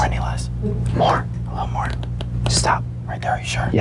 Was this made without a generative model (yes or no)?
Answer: yes